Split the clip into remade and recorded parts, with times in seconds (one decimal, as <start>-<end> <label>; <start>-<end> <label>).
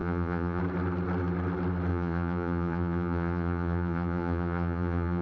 0.0-0.6 remade; 0.6-1.9 recorded; 1.9-5.2 remade